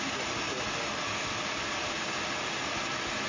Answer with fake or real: real